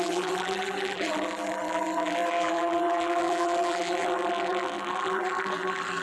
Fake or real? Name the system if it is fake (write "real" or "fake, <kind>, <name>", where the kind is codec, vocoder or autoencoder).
fake, vocoder, BigVGAN v2